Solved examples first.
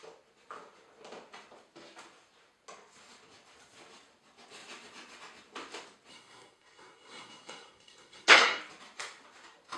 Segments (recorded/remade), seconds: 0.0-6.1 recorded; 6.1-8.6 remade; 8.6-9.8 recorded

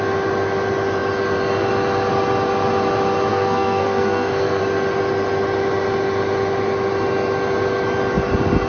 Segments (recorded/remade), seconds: 0.0-3.3 recorded; 3.3-4.6 remade; 4.6-8.7 recorded

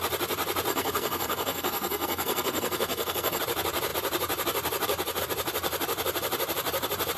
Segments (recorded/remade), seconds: 0.0-0.7 recorded; 0.7-3.4 remade; 3.4-7.2 recorded

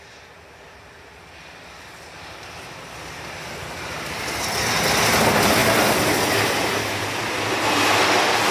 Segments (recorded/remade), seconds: 0.0-8.5 recorded

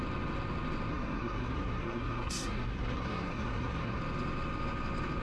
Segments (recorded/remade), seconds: 0.0-0.9 recorded; 0.9-4.0 remade; 4.0-5.2 recorded

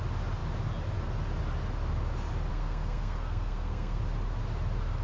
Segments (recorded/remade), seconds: 0.0-2.5 recorded; 2.5-4.0 remade; 4.0-5.0 recorded

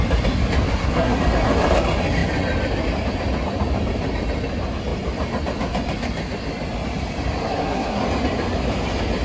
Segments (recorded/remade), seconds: 0.0-0.7 recorded; 0.7-1.2 remade; 1.2-7.5 recorded; 7.5-8.0 remade; 8.0-9.2 recorded

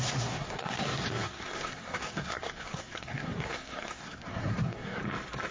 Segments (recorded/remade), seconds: 0.0-5.0 remade; 5.0-5.5 recorded